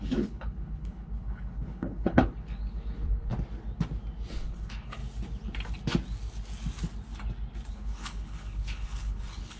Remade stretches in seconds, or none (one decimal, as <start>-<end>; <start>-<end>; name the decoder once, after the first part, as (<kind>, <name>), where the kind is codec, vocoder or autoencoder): 0.0-3.3 (codec, HILCodec); 4.3-5.0; 7.7-9.6